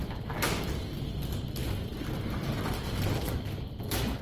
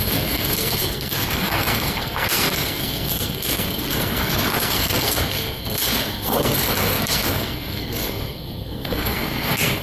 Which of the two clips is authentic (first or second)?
first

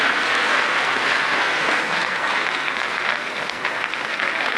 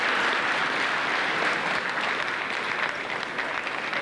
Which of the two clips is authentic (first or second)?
second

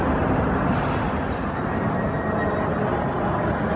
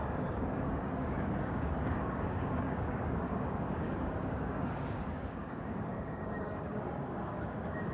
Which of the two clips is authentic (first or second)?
first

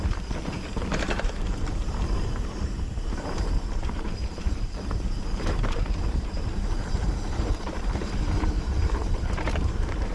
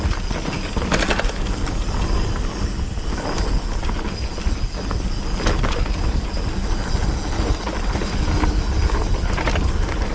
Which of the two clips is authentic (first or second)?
second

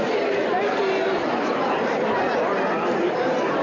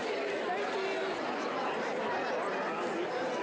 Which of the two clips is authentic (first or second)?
second